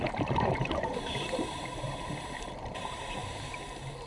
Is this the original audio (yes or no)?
no